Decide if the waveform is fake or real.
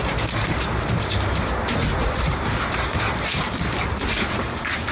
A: fake